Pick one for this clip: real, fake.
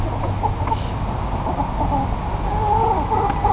real